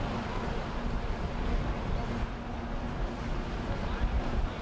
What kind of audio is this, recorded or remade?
recorded